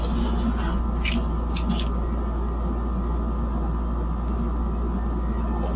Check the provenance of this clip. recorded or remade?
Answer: recorded